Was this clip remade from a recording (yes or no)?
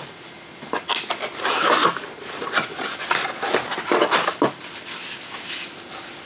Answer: no